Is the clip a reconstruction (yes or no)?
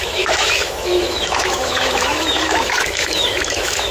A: yes